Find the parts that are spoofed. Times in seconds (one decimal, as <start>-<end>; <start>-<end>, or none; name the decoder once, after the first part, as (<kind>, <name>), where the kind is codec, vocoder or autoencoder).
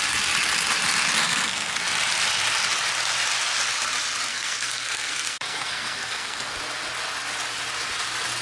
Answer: 1.2-1.8 (codec, SNAC); 4.3-6.6